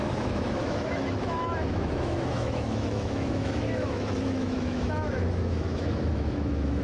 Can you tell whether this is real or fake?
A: fake